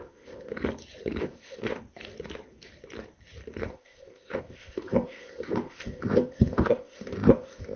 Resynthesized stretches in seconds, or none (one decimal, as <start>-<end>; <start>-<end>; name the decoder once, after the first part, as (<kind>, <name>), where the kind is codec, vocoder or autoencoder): 0.0-0.5 (codec, ZipCodec); 1.2-1.8; 3.7-7.8